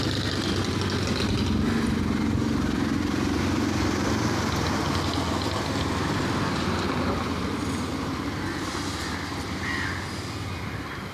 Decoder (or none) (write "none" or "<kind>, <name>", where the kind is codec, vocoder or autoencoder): none